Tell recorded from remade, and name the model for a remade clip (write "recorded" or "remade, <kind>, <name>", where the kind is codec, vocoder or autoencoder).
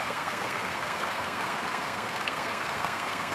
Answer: remade, codec, SNAC